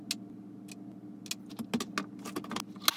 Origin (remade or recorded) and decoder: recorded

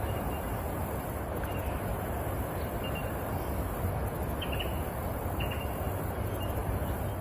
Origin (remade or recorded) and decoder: recorded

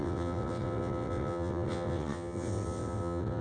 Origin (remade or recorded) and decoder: remade, vocoder, WaveNeXt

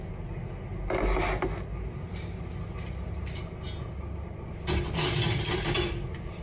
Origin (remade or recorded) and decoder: recorded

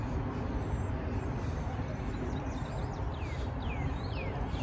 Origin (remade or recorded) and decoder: recorded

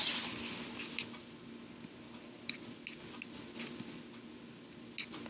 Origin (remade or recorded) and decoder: recorded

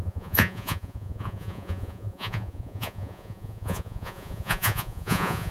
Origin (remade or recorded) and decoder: remade, vocoder, Vocos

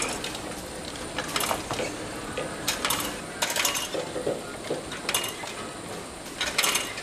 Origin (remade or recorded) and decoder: recorded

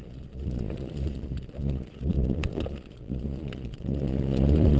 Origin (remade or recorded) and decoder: remade, vocoder, Vocos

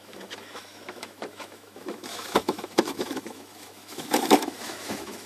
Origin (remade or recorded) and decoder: remade, autoencoder, DAC-VAE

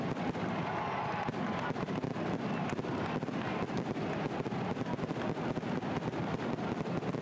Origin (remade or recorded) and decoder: recorded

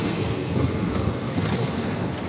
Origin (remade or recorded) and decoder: remade, codec, SNAC